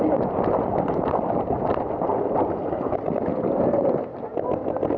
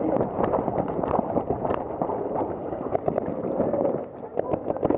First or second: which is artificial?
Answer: second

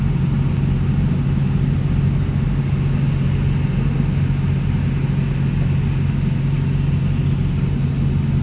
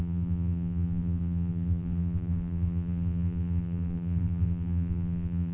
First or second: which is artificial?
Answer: second